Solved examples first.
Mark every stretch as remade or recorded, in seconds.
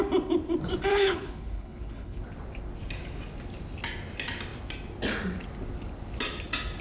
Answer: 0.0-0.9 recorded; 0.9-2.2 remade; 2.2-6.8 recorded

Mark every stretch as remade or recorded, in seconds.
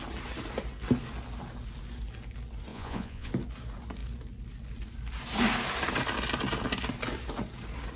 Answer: 0.0-2.7 recorded; 2.7-3.3 remade; 3.3-8.0 recorded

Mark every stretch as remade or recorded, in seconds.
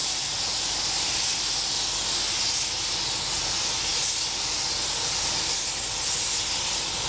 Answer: 0.0-7.1 recorded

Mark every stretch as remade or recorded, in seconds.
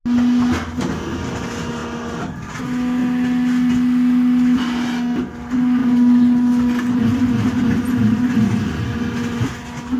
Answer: 0.0-10.0 recorded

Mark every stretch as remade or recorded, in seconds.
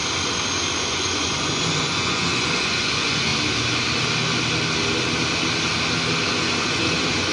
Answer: 0.0-0.8 recorded; 0.8-3.3 remade; 3.3-6.3 recorded; 6.3-7.3 remade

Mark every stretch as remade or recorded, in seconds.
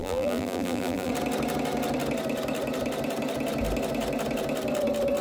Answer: 0.0-1.1 remade; 1.1-5.2 recorded